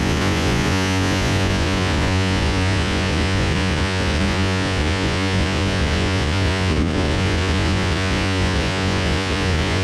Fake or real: fake